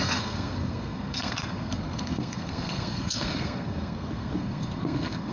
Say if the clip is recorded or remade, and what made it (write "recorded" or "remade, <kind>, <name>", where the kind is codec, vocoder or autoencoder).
remade, codec, SNAC